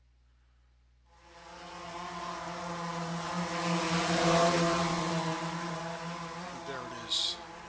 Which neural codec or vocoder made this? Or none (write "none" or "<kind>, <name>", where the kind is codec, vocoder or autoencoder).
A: none